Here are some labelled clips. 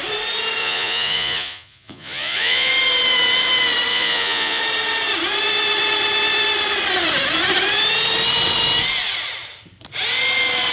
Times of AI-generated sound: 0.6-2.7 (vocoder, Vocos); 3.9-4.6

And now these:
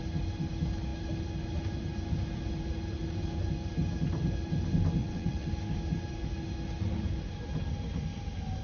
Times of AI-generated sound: 5.0-5.5 (vocoder, WaveNeXt)

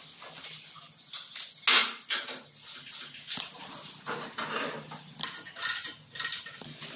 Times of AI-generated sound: none

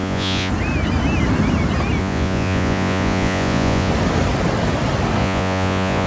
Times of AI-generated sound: 0.0-0.5 (vocoder, Vocos); 2.0-3.9; 5.2-6.1

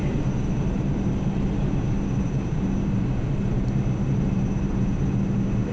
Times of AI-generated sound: none